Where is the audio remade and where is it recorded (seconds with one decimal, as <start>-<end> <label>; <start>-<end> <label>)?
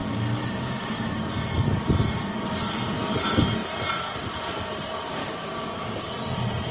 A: 0.0-5.2 recorded; 5.2-6.1 remade; 6.1-6.7 recorded